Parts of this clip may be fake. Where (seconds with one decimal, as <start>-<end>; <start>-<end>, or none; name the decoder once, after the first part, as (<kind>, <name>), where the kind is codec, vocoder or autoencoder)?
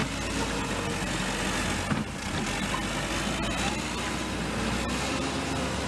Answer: none